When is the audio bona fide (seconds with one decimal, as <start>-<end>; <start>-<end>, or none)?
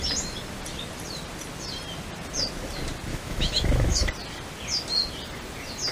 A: 0.0-3.1; 4.1-5.9